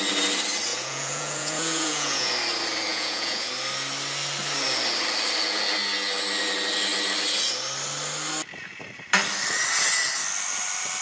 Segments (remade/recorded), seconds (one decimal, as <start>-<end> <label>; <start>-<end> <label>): 0.0-0.7 recorded; 0.7-2.3 remade; 2.3-2.9 recorded; 2.9-3.5 remade; 3.5-11.0 recorded